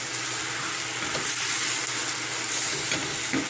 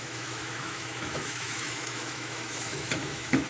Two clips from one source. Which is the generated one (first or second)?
second